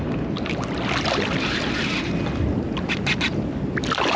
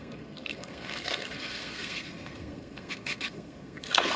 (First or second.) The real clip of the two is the first